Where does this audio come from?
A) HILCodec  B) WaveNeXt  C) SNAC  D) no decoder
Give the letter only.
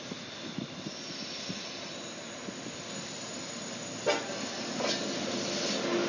D